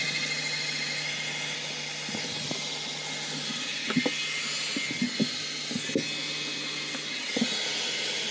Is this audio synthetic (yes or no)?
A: no